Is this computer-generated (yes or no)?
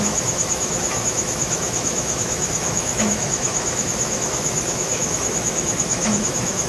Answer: yes